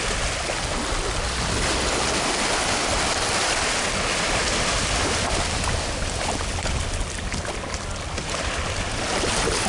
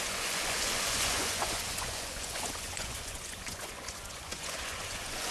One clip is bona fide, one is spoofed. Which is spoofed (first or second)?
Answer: second